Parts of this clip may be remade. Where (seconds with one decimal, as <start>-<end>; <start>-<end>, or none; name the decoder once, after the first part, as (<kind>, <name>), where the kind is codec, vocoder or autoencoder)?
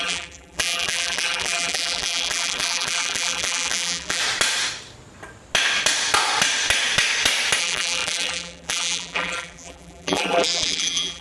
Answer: 0.0-4.2 (vocoder, BigVGAN v2); 7.6-11.2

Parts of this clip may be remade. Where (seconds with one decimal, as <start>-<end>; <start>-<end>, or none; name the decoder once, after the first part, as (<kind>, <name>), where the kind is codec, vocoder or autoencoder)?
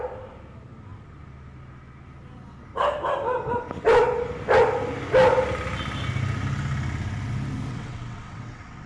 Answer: 7.7-8.9 (vocoder, WaveNeXt)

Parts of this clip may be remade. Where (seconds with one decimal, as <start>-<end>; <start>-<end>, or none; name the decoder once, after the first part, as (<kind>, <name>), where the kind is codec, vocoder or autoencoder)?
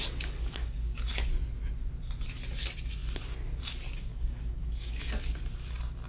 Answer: 0.0-1.1 (codec, DAC); 4.1-5.0